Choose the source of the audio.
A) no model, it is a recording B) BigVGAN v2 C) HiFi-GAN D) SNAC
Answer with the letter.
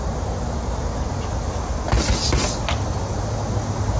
A